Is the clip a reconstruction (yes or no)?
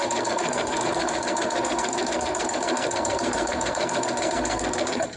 yes